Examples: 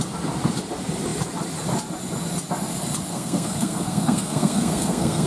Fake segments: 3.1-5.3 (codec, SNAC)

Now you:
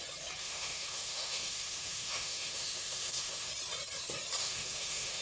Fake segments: 0.4-3.5 (autoencoder, DAC-VAE); 4.4-5.2

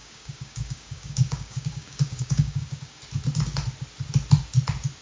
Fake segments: 0.0-3.0 (codec, DAC)

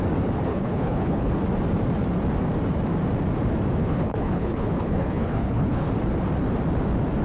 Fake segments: 0.5-1.3 (codec, HILCodec); 3.8-5.9

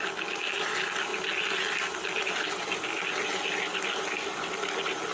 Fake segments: none